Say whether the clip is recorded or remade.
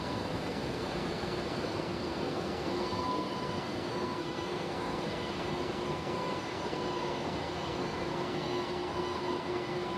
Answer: remade